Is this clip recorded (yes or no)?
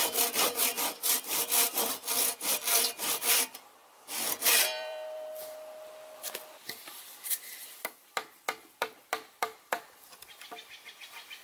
yes